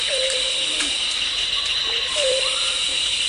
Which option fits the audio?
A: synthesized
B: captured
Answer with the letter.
A